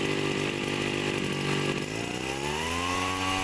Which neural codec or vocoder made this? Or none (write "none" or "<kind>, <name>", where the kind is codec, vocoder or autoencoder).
none